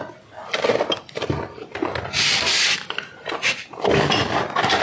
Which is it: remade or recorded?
recorded